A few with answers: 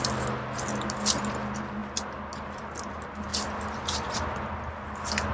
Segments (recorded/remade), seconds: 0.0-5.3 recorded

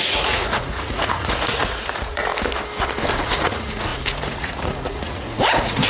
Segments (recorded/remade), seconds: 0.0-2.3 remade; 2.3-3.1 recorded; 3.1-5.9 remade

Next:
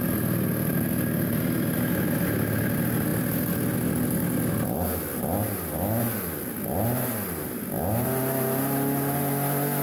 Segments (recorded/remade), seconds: 0.0-9.8 recorded

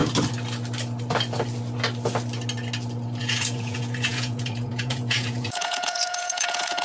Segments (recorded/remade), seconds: 0.0-3.2 recorded; 3.2-6.8 remade

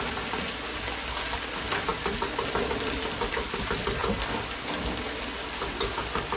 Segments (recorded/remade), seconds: 0.0-6.4 recorded

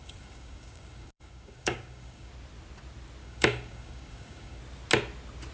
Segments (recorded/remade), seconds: 0.0-2.3 remade; 2.3-3.2 recorded; 3.2-4.6 remade; 4.6-5.5 recorded

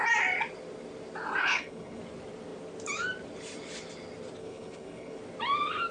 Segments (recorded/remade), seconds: 0.0-1.4 recorded; 1.4-2.0 remade; 2.0-4.4 recorded; 4.4-5.2 remade; 5.2-5.9 recorded

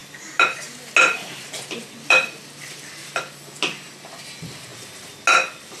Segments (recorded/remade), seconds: 0.0-1.8 recorded; 1.8-3.2 remade; 3.2-5.8 recorded